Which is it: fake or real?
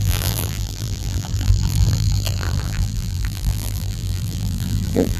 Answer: fake